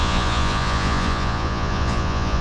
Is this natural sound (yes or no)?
no